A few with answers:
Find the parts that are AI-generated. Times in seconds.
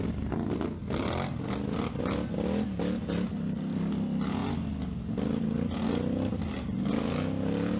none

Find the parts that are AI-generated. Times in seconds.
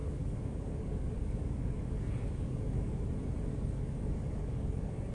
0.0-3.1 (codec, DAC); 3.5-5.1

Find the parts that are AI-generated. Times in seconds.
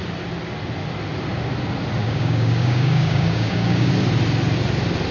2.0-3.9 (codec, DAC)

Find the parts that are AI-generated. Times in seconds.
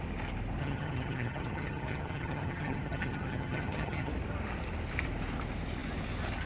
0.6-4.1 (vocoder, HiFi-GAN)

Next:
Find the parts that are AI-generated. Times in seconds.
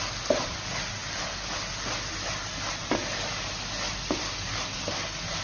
none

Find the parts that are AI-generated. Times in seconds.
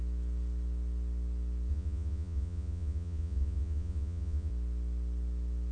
1.7-4.5 (vocoder, Vocos)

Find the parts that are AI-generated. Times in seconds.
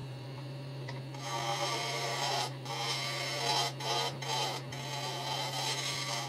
0.0-1.0 (vocoder, BigVGAN v2); 1.5-2.7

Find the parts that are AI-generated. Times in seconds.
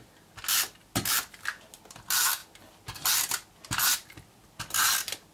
none